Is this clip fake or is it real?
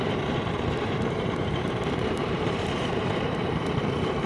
fake